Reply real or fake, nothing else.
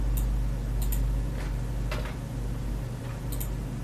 real